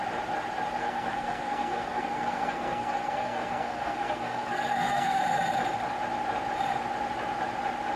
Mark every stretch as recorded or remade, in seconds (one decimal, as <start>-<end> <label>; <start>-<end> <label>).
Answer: 0.0-0.8 recorded; 0.8-5.2 remade; 5.2-8.0 recorded